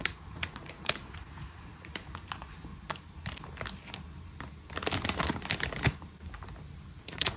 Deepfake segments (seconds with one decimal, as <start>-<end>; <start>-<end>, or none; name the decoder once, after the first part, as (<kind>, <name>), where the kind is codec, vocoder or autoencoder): 0.0-2.7 (vocoder, Vocos); 7.0-7.4